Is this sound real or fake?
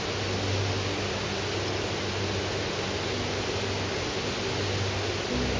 real